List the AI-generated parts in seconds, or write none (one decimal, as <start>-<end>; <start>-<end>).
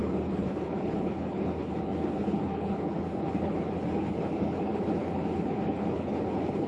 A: 0.0-6.7